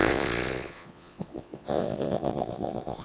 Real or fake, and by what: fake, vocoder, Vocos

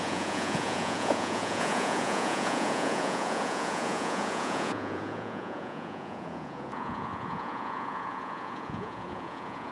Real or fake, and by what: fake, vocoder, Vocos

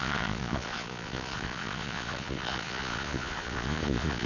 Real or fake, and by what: fake, vocoder, Vocos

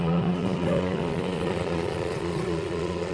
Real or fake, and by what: fake, vocoder, Vocos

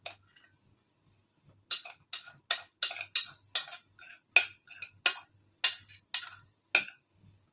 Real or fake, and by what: real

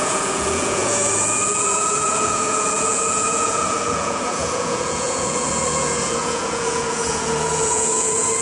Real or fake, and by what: fake, vocoder, Vocos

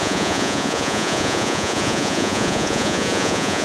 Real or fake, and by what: fake, vocoder, Vocos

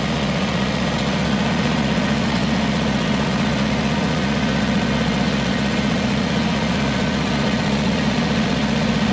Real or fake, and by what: fake, vocoder, Vocos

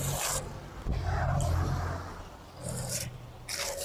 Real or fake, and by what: real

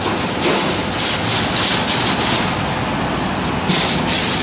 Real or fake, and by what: real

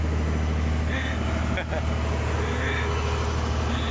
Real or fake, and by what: real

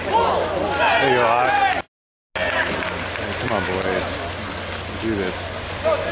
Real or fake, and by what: real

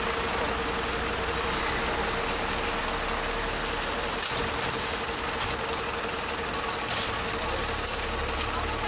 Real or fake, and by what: real